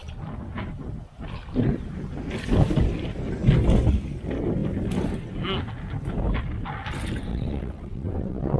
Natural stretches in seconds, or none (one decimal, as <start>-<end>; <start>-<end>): 0.0-7.3